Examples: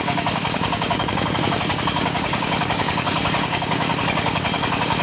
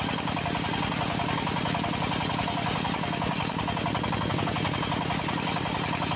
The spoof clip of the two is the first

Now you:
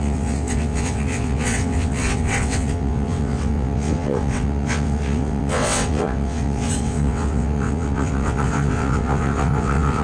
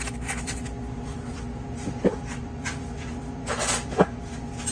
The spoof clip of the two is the first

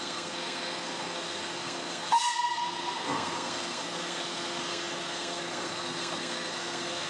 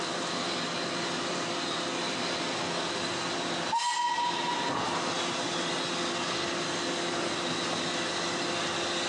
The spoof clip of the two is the first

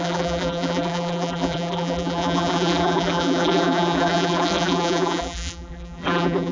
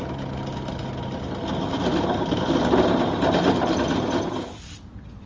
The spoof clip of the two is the first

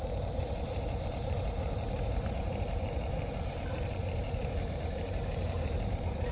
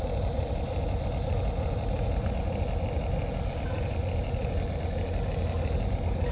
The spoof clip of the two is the first